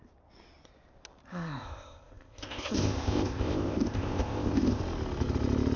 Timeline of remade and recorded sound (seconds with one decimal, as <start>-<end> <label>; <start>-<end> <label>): 0.0-1.3 recorded; 1.3-4.8 remade; 4.8-5.8 recorded